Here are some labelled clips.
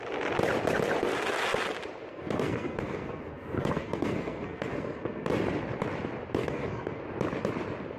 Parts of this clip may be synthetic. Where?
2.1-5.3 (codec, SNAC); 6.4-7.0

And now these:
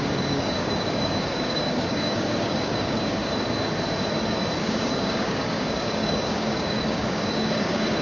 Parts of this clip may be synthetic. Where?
0.0-3.2 (codec, DAC); 4.6-8.0

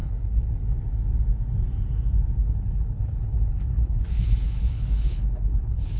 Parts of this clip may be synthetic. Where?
0.0-0.5 (codec, HILCodec); 2.4-6.0

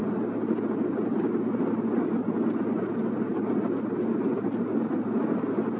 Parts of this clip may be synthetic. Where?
none

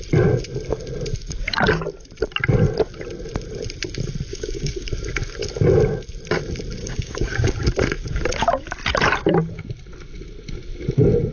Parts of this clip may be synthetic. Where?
4.3-4.9 (codec, DAC); 6.8-7.5

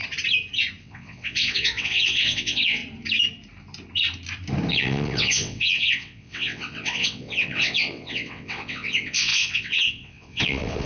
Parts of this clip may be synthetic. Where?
0.8-2.8 (vocoder, WaveNeXt); 4.7-10.9

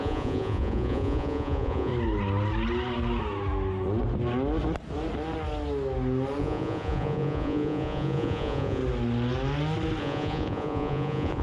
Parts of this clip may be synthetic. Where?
0.0-1.9 (vocoder, Vocos); 6.4-8.8; 10.0-11.4

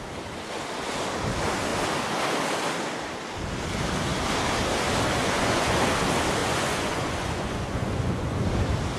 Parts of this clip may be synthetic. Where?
5.2-5.8 (vocoder, Vocos); 6.4-8.5